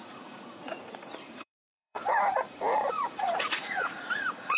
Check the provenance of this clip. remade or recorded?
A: remade